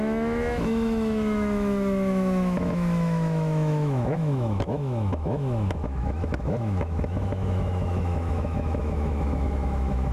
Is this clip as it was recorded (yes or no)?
no